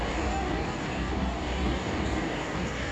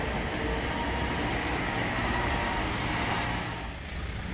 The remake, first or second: first